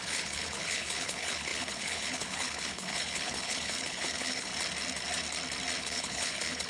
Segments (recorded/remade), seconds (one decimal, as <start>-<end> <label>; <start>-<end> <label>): 0.0-4.5 remade; 4.5-5.8 recorded; 5.8-6.7 remade